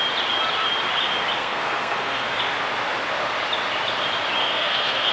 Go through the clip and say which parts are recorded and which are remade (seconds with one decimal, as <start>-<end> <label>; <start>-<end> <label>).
0.0-1.4 recorded; 1.4-2.4 remade; 2.4-4.4 recorded; 4.4-5.1 remade